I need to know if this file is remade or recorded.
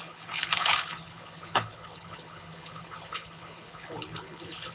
remade